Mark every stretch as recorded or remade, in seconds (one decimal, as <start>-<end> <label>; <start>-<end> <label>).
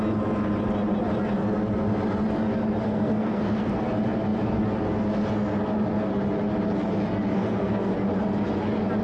0.0-2.8 recorded; 2.8-3.8 remade; 3.8-7.3 recorded; 7.3-7.9 remade; 7.9-9.0 recorded